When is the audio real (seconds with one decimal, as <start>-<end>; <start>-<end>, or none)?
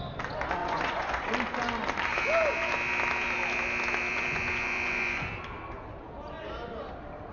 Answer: 0.0-0.6; 1.3-4.1; 5.3-7.3